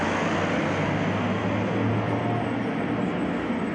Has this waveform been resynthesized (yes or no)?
no